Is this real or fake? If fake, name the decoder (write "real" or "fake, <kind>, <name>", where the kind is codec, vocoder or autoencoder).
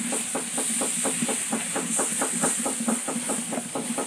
real